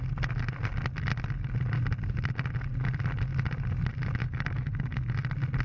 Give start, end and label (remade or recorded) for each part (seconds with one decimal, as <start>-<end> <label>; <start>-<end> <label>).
0.0-4.2 recorded; 4.2-5.1 remade; 5.1-5.6 recorded